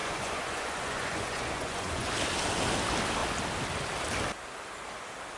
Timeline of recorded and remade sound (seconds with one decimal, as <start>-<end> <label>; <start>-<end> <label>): 0.0-2.1 remade; 2.1-5.4 recorded